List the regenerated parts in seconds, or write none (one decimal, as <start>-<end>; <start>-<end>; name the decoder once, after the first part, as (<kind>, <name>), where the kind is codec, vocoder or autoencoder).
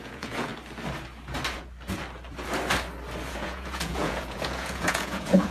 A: 0.0-0.5 (vocoder, Vocos); 3.3-5.5